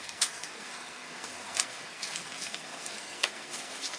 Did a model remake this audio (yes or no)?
yes